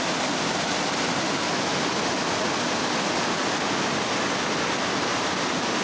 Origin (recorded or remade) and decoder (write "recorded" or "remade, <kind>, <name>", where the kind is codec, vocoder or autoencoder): recorded